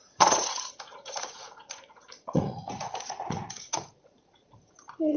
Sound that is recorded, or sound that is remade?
remade